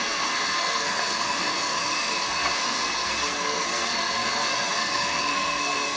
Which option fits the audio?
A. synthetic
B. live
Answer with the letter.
A